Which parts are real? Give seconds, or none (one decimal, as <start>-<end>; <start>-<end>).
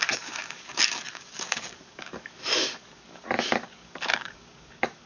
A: none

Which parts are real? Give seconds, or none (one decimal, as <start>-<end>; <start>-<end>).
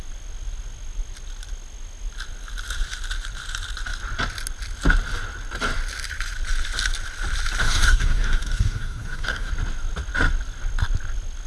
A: 0.0-7.6; 9.5-11.5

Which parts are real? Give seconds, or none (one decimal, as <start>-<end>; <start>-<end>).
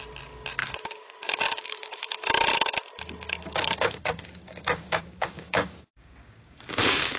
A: 0.0-0.6; 2.3-3.4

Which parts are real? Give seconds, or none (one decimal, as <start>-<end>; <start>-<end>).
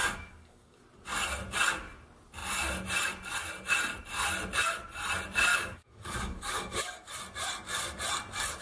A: 0.8-5.5; 7.1-8.6